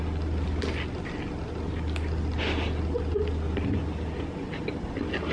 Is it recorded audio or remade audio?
recorded